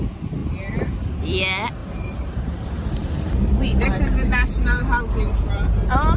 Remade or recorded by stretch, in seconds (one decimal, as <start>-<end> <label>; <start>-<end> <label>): 0.0-1.8 recorded; 1.8-5.0 remade; 5.0-6.2 recorded